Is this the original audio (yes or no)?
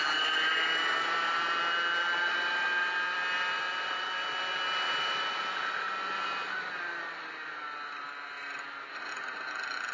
yes